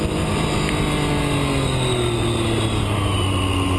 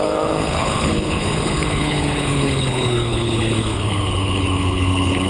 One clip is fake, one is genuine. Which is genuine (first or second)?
first